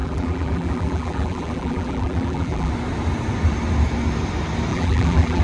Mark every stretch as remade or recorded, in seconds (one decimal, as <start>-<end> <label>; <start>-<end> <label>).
0.0-2.7 remade; 2.7-4.7 recorded; 4.7-5.4 remade